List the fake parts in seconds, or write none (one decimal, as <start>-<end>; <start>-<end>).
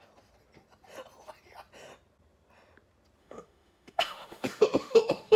3.2-5.4